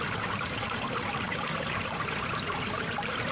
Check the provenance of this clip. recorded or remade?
remade